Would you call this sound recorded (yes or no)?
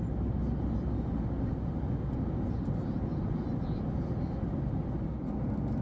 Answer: yes